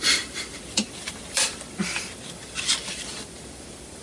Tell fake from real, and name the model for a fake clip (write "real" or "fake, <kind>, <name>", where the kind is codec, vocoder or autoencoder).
fake, vocoder, BigVGAN v2